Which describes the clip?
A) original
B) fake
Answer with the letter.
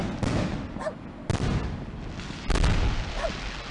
A